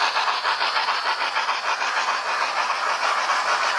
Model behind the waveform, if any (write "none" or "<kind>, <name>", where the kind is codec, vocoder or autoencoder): none